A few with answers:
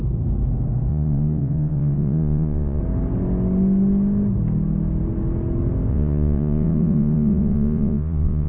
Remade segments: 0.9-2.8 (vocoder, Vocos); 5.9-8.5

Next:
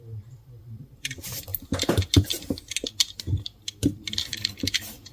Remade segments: 0.0-1.5 (vocoder, BigVGAN v2); 4.4-5.1

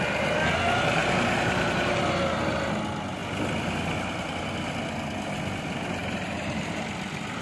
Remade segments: 1.0-2.0 (vocoder, BigVGAN v2); 6.0-6.8